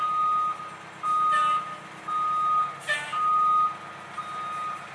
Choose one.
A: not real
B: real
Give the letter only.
B